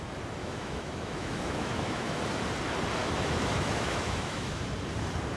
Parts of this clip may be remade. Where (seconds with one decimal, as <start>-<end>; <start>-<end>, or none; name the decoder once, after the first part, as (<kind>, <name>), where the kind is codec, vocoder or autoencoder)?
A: 0.4-2.2 (autoencoder, DAC-VAE); 3.0-4.6